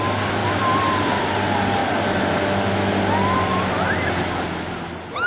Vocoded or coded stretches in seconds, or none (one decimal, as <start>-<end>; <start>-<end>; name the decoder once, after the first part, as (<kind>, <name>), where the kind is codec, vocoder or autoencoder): none